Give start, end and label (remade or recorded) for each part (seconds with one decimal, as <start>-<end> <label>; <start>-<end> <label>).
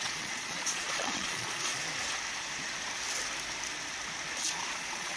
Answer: 0.0-1.8 remade; 1.8-4.5 recorded; 4.5-5.2 remade